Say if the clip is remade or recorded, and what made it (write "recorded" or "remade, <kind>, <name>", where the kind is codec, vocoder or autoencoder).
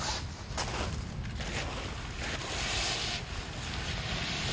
recorded